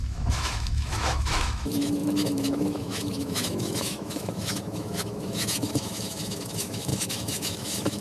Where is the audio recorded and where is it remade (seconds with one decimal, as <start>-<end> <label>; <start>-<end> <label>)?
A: 0.0-8.0 remade